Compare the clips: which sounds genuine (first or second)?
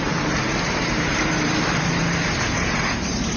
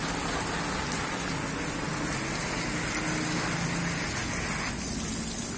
second